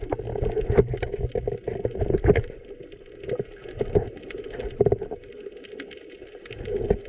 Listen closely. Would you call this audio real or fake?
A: real